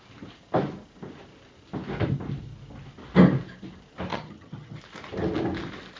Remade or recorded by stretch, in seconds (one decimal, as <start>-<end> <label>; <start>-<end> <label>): 0.0-4.1 recorded; 4.1-4.8 remade; 4.8-6.0 recorded